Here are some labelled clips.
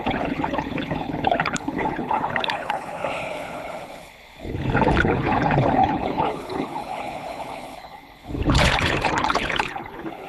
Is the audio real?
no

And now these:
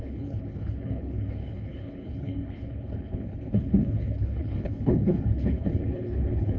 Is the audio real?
no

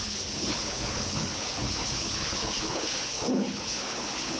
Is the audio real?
no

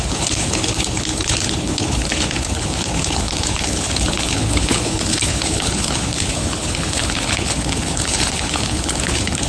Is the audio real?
no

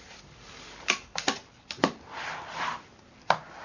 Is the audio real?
yes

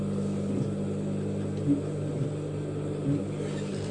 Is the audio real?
yes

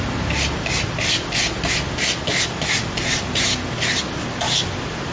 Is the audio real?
yes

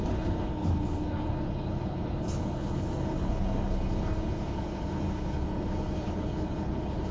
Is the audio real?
no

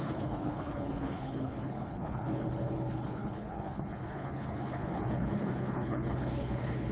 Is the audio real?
no